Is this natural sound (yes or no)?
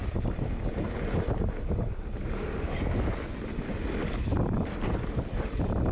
yes